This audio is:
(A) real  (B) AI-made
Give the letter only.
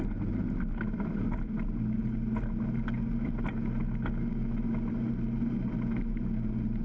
A